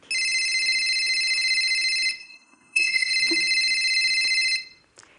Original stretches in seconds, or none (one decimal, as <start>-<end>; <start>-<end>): 0.0-2.2; 3.1-5.2